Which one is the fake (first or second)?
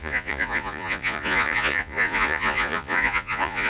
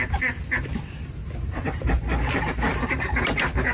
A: first